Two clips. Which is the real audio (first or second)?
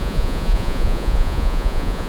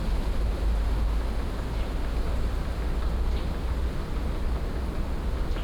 second